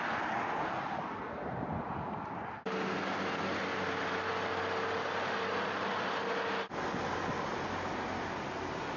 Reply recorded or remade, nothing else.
recorded